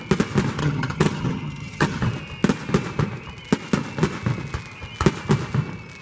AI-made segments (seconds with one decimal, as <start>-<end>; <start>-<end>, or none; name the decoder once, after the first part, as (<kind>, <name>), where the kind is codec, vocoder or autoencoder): 0.6-2.0 (vocoder, HiFi-GAN)